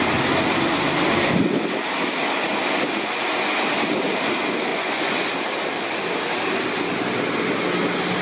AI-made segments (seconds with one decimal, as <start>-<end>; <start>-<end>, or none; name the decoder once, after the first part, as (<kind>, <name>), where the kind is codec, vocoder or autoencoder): 4.7-5.3 (vocoder, Vocos)